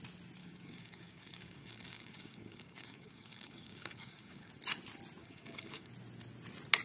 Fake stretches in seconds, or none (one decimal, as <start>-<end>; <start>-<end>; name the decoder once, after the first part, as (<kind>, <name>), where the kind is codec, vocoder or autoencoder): 0.4-4.5 (codec, DAC); 5.2-5.9